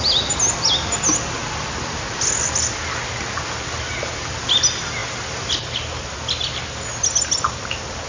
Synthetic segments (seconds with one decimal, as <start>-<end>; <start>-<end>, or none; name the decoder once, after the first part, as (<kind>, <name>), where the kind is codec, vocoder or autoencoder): none